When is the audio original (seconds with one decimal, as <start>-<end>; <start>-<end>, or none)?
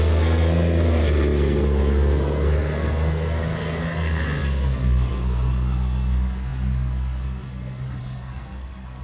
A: none